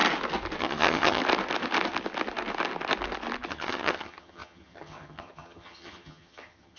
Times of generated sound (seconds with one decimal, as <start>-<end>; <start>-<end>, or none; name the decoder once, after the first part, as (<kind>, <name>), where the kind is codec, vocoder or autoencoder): 0.6-1.2 (vocoder, HiFi-GAN); 3.5-6.8